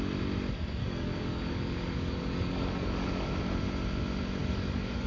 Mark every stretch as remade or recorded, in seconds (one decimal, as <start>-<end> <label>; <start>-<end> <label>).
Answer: 0.0-0.8 recorded; 0.8-3.3 remade; 3.3-4.4 recorded; 4.4-5.1 remade